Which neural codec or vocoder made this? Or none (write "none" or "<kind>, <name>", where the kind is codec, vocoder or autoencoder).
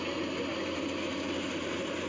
none